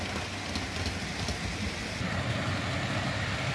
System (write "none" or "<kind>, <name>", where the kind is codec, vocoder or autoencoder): none